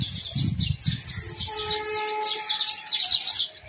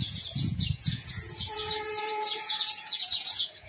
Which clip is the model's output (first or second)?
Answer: second